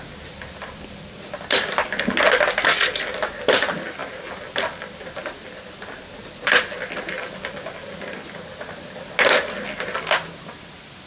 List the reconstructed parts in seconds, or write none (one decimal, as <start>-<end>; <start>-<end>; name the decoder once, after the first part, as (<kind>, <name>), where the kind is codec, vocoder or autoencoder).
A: none